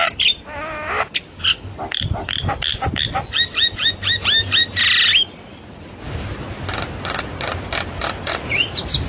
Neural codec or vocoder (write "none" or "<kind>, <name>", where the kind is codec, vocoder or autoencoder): none